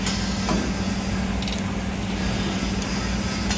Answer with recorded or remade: recorded